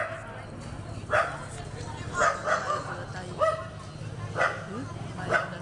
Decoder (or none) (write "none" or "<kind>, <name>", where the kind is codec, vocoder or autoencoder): none